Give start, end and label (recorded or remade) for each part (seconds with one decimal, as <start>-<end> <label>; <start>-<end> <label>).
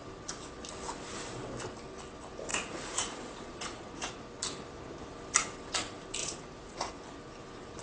0.0-2.5 recorded; 2.5-4.2 remade; 4.2-6.2 recorded; 6.2-6.9 remade; 6.9-7.8 recorded